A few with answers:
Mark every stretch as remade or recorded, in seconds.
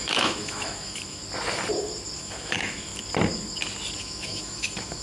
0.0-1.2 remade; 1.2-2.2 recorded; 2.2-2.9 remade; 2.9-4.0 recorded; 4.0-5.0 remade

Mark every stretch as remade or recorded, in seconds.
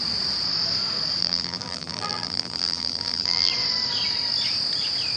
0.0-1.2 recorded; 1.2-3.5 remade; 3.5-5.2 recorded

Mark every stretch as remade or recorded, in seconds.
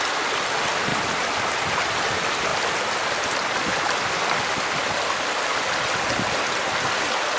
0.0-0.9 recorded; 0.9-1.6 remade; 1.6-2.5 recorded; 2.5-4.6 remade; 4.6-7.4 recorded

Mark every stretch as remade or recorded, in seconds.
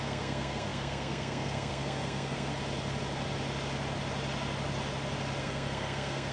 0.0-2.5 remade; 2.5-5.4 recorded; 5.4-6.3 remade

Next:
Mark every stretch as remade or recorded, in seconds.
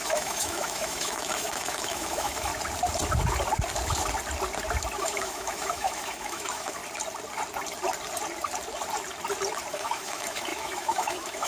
0.0-2.5 remade; 2.5-5.0 recorded; 5.0-6.8 remade; 6.8-9.7 recorded; 9.7-11.5 remade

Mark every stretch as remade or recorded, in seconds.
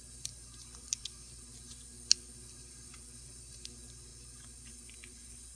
0.0-5.6 recorded